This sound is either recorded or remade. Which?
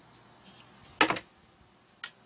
recorded